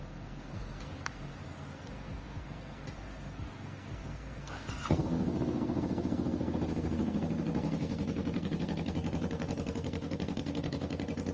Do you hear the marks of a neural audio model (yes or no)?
yes